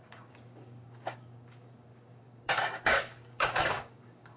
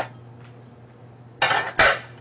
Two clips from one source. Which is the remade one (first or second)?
first